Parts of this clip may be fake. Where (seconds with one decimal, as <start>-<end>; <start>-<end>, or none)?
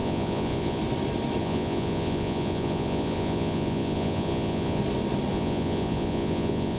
0.0-0.8; 1.4-4.8; 5.3-6.8